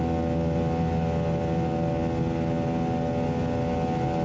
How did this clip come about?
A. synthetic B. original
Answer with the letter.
B